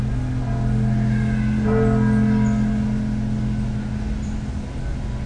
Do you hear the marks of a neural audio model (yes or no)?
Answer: no